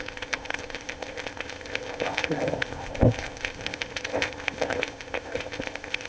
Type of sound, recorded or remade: remade